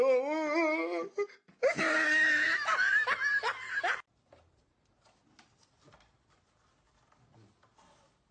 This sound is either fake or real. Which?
real